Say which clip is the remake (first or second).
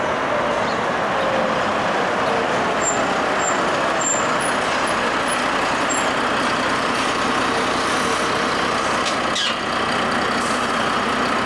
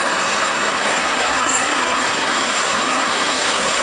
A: second